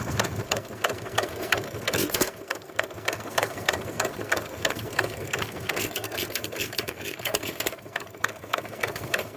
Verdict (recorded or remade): remade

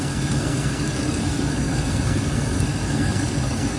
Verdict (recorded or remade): remade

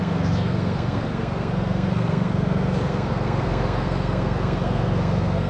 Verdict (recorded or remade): remade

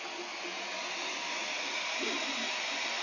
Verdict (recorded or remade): recorded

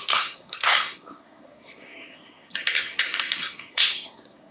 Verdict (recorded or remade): remade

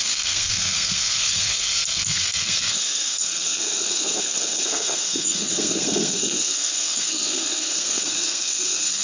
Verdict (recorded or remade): remade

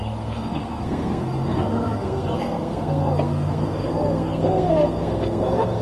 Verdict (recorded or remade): remade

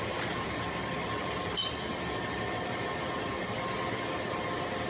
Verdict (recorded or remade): recorded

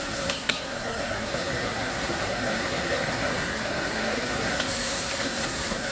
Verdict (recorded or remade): remade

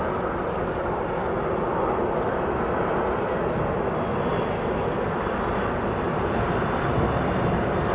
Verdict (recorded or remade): recorded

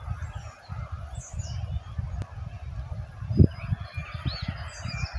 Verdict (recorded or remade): recorded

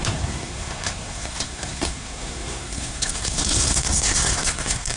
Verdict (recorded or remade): remade